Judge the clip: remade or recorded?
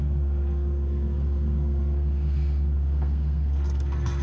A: remade